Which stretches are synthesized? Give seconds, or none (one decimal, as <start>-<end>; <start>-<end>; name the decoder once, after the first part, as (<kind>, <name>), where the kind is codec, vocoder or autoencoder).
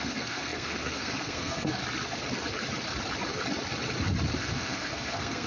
0.0-1.8 (codec, SNAC); 4.4-5.5